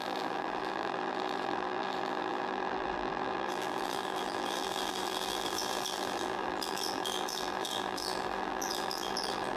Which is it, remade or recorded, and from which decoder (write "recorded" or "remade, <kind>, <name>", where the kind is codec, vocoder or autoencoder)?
remade, vocoder, BigVGAN v2